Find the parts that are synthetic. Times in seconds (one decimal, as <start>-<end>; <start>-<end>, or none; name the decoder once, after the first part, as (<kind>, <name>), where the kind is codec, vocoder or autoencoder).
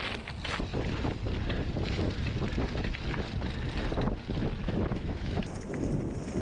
4.6-5.4 (autoencoder, DAC-VAE)